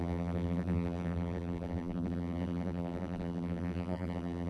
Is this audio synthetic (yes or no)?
yes